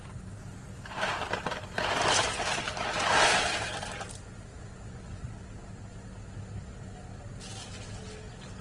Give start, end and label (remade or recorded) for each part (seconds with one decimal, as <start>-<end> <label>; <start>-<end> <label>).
0.0-4.5 recorded; 4.5-5.3 remade; 5.3-8.6 recorded